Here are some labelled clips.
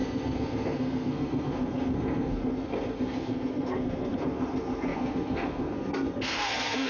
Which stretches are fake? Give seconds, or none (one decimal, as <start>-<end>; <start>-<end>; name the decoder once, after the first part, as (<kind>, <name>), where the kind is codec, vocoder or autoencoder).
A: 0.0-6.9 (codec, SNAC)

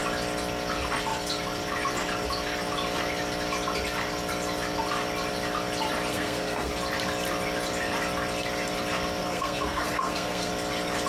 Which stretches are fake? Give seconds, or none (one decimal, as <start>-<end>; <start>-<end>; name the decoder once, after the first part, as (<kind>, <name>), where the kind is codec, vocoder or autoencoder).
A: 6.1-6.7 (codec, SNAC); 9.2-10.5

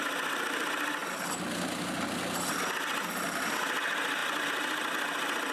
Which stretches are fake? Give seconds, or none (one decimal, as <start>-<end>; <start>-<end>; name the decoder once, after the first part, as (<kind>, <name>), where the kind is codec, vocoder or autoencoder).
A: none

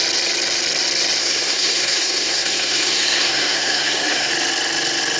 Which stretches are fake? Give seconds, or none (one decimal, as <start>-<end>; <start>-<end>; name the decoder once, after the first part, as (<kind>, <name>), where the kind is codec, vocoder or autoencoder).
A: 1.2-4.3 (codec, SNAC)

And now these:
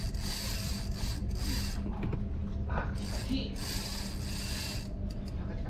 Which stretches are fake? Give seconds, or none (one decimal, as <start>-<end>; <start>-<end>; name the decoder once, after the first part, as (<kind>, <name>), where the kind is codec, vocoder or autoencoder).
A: none

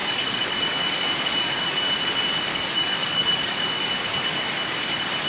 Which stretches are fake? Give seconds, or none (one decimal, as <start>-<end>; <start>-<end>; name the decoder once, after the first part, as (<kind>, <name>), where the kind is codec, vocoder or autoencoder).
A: 0.0-1.9 (codec, DAC); 2.5-5.3